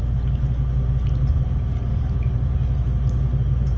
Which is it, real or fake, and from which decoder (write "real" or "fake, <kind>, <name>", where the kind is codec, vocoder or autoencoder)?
real